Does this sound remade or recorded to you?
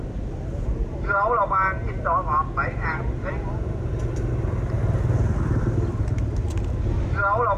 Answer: recorded